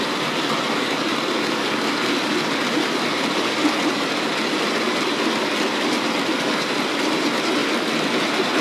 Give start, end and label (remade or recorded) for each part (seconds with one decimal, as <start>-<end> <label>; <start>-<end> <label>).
0.0-8.6 recorded